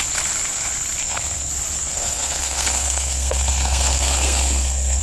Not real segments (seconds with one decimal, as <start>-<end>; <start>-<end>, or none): 1.0-1.5; 1.9-5.0